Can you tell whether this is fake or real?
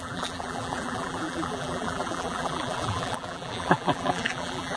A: fake